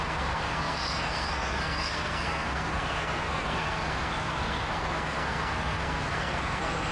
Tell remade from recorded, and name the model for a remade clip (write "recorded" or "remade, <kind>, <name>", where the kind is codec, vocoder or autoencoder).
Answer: remade, codec, SNAC